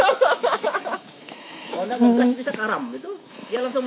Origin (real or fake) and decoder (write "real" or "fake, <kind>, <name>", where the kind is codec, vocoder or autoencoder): fake, autoencoder, DAC-VAE